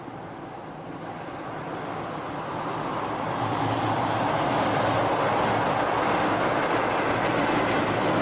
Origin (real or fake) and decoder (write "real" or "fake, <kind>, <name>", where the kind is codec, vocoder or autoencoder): real